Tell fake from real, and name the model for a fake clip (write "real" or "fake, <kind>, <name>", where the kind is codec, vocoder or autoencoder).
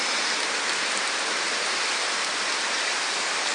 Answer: real